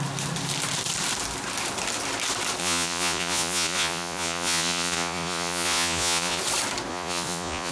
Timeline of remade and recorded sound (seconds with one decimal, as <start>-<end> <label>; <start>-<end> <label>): 0.0-2.6 recorded; 2.6-6.4 remade; 6.4-6.9 recorded; 6.9-7.7 remade